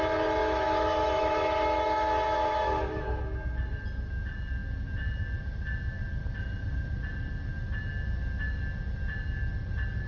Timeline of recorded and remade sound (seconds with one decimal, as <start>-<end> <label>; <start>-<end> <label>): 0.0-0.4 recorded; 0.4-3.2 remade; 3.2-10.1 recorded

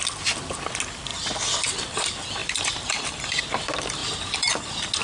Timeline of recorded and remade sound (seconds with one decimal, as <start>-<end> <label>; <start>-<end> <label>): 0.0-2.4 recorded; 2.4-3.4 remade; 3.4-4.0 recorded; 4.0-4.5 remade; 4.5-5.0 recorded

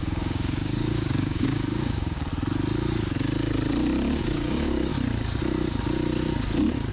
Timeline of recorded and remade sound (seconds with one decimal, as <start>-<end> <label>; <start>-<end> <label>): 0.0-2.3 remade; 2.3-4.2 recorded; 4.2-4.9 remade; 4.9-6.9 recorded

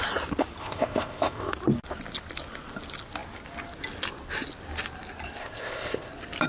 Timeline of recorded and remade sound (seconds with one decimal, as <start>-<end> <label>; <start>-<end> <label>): 0.0-0.6 recorded; 0.6-1.5 remade; 1.5-5.4 recorded; 5.4-6.1 remade; 6.1-6.5 recorded

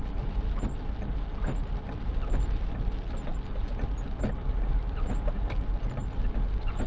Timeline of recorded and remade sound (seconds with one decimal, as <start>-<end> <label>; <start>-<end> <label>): 0.0-6.9 recorded